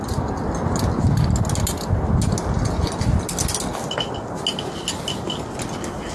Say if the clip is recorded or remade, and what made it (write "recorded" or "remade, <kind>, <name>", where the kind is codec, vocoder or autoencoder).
recorded